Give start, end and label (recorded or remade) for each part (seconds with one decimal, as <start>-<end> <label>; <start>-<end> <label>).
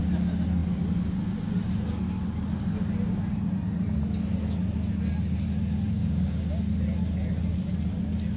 0.0-6.0 recorded; 6.0-6.5 remade; 6.5-8.4 recorded